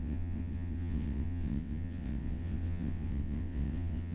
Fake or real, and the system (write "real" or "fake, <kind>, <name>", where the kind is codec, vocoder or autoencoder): fake, vocoder, WaveNeXt